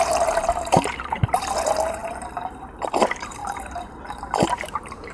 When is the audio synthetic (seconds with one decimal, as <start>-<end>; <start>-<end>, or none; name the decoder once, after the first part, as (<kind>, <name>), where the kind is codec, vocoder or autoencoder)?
0.0-5.1 (vocoder, BigVGAN v2)